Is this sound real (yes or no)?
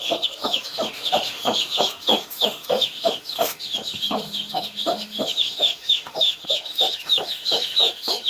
no